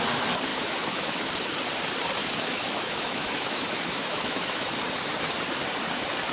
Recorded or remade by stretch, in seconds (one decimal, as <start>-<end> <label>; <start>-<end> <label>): 0.0-0.5 recorded; 0.5-1.3 remade; 1.3-2.2 recorded; 2.2-4.7 remade; 4.7-6.3 recorded